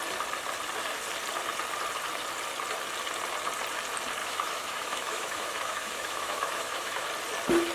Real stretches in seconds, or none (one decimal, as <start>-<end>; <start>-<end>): 0.0-4.2; 7.1-7.7